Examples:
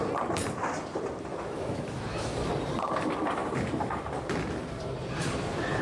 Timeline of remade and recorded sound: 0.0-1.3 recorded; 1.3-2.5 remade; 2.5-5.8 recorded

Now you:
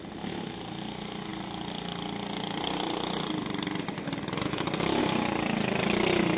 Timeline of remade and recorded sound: 0.0-6.4 recorded

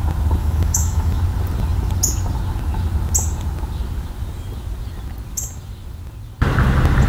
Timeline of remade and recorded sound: 0.0-0.4 recorded; 0.4-1.2 remade; 1.2-7.1 recorded

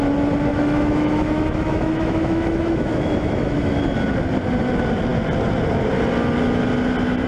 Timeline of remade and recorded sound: 0.0-0.5 recorded; 0.5-3.8 remade; 3.8-7.3 recorded

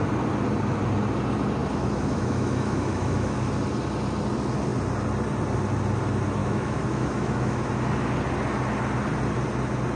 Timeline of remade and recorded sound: 0.0-1.6 recorded; 1.6-3.5 remade; 3.5-6.4 recorded; 6.4-7.7 remade; 7.7-10.0 recorded

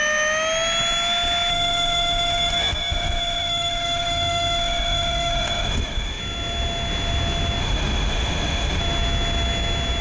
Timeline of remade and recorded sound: 0.0-1.5 recorded; 1.5-6.2 remade; 6.2-7.6 recorded; 7.6-8.8 remade; 8.8-10.0 recorded

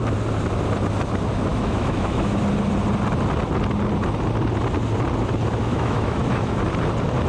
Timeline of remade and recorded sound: 0.0-1.5 recorded; 1.5-2.4 remade; 2.4-5.7 recorded; 5.7-6.6 remade; 6.6-7.3 recorded

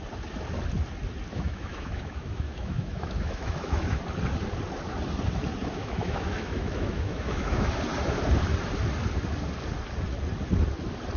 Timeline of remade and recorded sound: 0.0-1.3 recorded; 1.3-4.0 remade; 4.0-5.6 recorded; 5.6-7.7 remade; 7.7-11.2 recorded